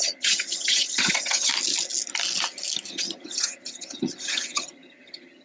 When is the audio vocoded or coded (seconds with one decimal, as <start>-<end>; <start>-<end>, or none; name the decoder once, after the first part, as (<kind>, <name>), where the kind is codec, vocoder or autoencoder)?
0.0-1.5 (vocoder, HiFi-GAN); 2.9-5.4